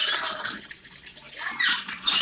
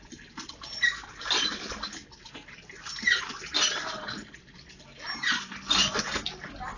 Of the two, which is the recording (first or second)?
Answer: second